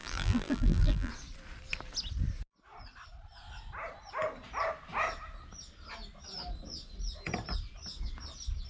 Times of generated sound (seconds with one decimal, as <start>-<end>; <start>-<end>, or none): 0.0-1.1